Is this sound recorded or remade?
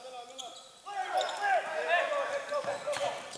recorded